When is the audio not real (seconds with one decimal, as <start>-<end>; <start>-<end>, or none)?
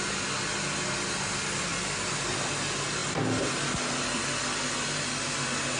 none